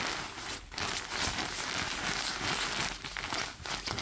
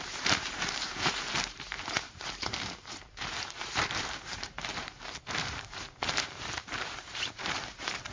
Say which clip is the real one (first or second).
first